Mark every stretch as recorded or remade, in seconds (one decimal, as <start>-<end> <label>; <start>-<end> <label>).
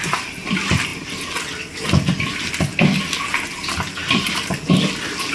0.0-4.0 recorded; 4.0-4.7 remade; 4.7-5.3 recorded